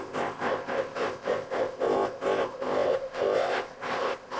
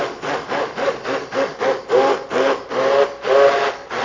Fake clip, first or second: first